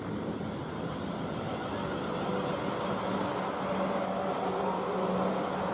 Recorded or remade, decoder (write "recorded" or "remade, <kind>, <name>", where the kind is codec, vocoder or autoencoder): recorded